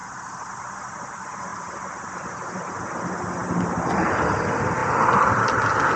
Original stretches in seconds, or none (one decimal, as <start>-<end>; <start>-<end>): 0.0-6.0

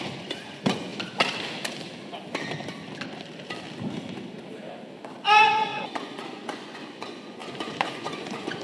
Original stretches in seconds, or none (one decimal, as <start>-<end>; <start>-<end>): 0.9-5.3

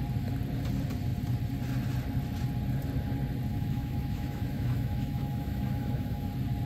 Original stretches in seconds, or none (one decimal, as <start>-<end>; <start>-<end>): 0.0-3.5; 6.3-6.7